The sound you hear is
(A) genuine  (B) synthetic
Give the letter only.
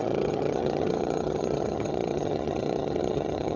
B